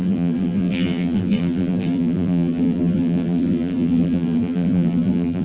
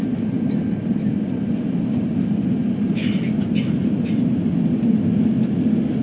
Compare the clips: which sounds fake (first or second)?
first